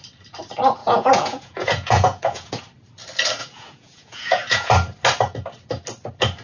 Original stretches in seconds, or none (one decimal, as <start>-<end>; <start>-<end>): 0.0-0.8; 2.6-3.4; 4.7-6.4